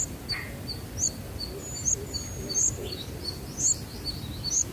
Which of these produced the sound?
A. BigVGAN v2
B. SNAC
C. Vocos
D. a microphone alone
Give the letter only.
D